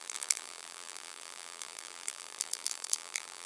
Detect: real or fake fake